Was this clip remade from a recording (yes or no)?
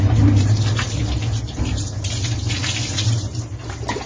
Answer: no